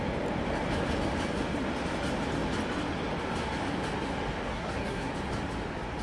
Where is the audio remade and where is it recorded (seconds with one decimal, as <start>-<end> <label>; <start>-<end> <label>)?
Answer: 0.0-4.5 recorded; 4.5-5.1 remade; 5.1-6.0 recorded